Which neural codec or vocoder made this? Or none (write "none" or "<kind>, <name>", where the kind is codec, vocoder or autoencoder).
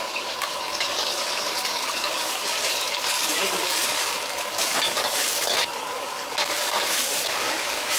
codec, DAC